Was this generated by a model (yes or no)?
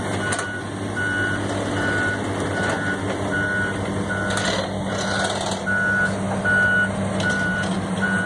no